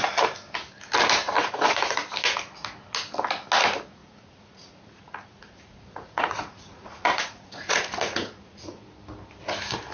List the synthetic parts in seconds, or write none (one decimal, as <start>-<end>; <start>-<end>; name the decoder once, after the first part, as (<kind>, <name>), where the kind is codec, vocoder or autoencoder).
1.4-2.1 (vocoder, Vocos); 4.0-8.8